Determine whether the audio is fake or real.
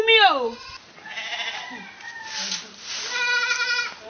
real